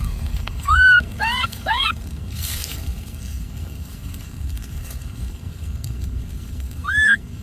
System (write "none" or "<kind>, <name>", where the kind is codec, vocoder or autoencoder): codec, SNAC